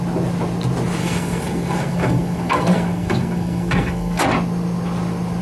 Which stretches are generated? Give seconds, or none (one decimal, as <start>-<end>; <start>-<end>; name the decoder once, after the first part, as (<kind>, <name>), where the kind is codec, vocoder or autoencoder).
1.0-4.2 (codec, SNAC)